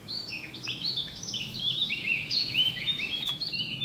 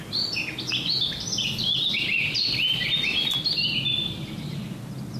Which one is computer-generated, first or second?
first